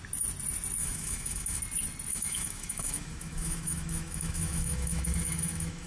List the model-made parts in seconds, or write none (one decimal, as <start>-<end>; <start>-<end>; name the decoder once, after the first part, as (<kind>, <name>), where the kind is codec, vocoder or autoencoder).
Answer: 0.8-1.6 (autoencoder, DAC-VAE); 2.1-5.9